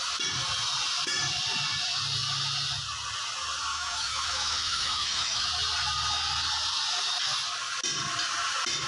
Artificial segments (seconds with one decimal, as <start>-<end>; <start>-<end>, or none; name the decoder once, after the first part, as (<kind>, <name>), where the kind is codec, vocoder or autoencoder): 3.7-5.5 (autoencoder, DAC-VAE)